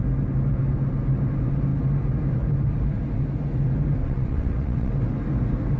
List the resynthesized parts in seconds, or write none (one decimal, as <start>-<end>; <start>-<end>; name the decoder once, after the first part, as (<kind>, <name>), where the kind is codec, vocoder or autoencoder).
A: 4.0-4.9 (vocoder, WaveNeXt)